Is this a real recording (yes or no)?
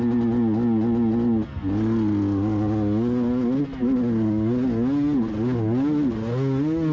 yes